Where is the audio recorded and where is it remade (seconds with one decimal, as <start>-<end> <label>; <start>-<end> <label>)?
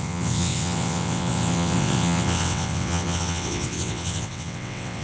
0.0-5.0 remade